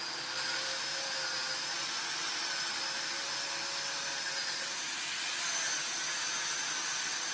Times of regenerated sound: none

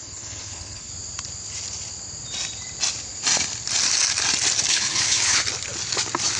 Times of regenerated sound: 0.0-0.9 (codec, HILCodec); 4.7-5.4